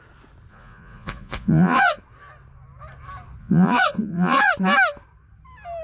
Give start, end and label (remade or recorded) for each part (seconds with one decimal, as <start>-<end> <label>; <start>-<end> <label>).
0.0-0.5 recorded; 0.5-2.0 remade; 2.0-3.4 recorded; 3.4-4.5 remade; 4.5-5.8 recorded